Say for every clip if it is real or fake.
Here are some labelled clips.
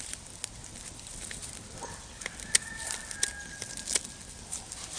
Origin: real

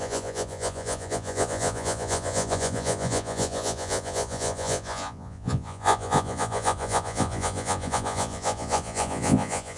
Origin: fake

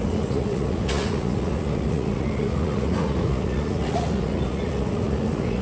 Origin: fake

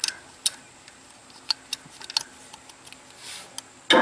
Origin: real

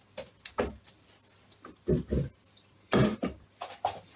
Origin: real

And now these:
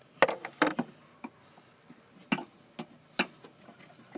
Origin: real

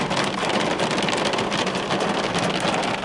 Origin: real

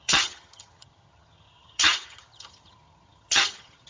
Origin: fake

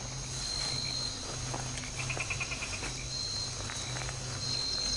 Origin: real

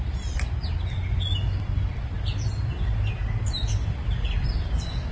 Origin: real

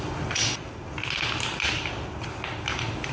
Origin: real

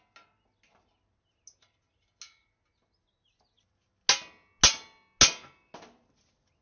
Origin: real